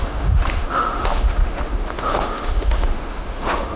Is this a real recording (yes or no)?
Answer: no